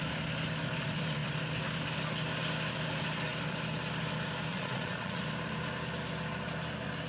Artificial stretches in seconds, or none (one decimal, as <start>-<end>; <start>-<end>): 4.5-5.2